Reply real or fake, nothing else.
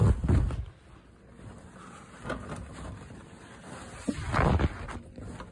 real